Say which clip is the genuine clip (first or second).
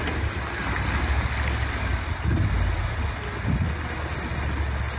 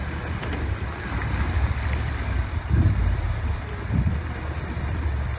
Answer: first